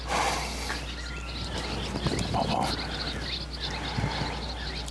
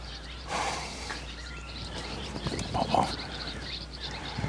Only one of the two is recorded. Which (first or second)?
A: first